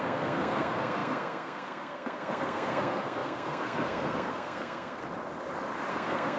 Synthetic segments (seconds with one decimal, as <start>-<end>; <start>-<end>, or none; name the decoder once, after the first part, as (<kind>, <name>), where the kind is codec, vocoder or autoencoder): 0.0-5.0 (codec, SNAC); 5.9-6.4